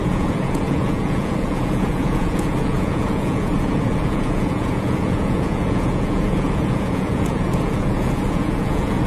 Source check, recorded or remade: remade